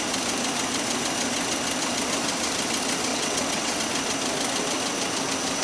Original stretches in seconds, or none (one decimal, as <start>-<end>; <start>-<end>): 0.0-3.1; 3.8-5.6